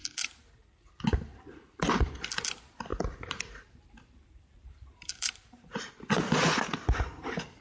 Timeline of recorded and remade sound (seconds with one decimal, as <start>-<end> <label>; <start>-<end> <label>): 0.0-2.9 recorded; 2.9-5.9 remade; 5.9-7.6 recorded